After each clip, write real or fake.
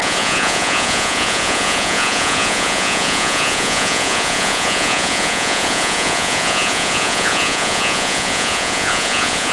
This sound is fake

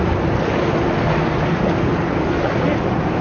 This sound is real